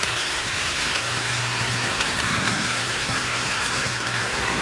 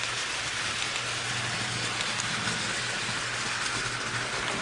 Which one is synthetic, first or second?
first